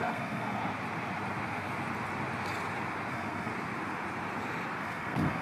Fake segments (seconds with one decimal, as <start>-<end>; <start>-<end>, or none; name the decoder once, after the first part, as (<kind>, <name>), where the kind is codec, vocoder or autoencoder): 0.0-0.6 (codec, SNAC); 3.1-3.5; 4.8-5.4